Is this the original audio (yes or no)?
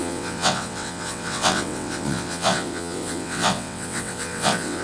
no